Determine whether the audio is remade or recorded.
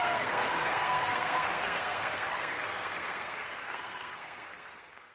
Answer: remade